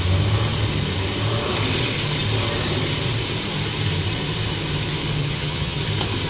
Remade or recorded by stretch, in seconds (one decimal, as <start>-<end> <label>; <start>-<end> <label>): 0.0-5.2 recorded; 5.2-5.8 remade; 5.8-6.3 recorded